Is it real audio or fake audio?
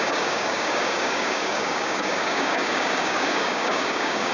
fake